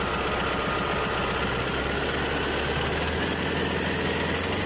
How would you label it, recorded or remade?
recorded